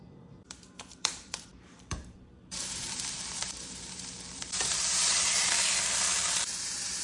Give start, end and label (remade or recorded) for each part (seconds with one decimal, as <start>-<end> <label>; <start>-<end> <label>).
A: 0.0-7.0 remade